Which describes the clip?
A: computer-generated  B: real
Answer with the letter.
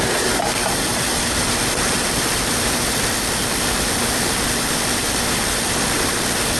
A